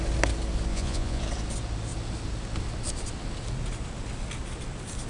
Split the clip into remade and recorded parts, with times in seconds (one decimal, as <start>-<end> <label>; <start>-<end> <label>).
0.0-0.7 recorded; 0.7-1.2 remade; 1.2-5.1 recorded